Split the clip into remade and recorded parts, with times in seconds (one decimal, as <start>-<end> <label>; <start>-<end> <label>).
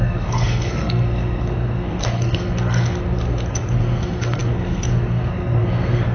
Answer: 0.0-6.1 remade